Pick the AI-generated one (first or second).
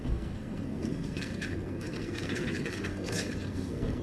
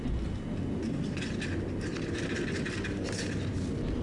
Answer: first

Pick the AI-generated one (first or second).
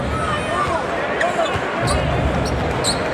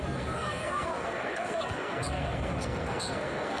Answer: second